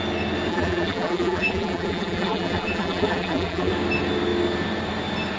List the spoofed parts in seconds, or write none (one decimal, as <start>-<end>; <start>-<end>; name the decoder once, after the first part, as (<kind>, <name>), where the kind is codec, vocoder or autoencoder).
0.5-3.7 (vocoder, BigVGAN v2)